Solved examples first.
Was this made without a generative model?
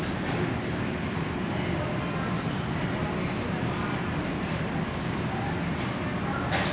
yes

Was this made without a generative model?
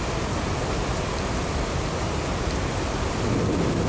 yes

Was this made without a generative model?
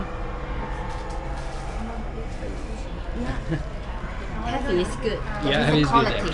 yes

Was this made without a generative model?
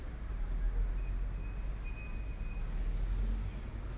yes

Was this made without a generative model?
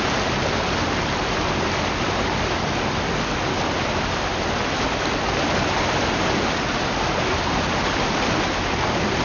yes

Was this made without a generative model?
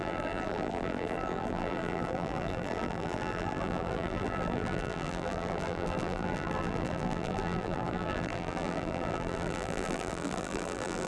no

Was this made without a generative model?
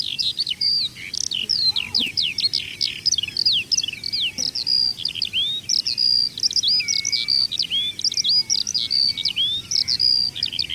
yes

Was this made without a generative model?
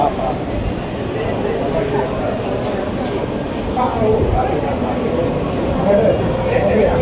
yes